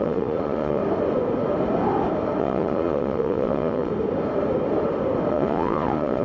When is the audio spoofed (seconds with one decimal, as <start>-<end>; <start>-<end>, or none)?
0.0-0.8; 2.4-3.9; 5.3-6.2

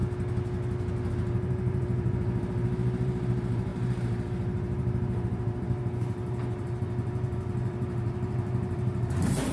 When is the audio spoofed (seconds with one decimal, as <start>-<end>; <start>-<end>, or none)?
1.1-9.5

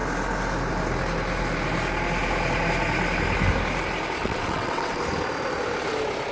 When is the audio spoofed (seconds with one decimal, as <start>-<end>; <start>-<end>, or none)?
4.2-5.0

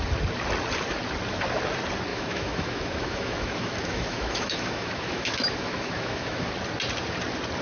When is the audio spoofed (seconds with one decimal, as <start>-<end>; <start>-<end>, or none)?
2.1-6.5

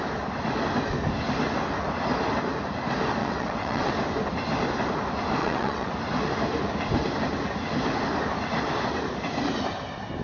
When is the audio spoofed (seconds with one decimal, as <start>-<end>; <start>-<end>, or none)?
3.2-3.9; 5.4-5.9

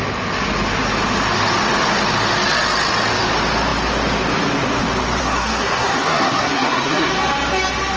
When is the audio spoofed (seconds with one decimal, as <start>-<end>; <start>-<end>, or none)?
5.2-7.1

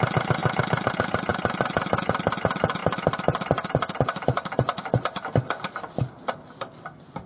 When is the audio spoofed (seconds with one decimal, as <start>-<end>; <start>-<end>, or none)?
1.3-2.0

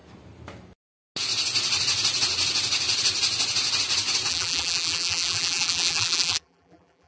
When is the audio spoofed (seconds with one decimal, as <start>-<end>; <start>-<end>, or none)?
4.3-7.1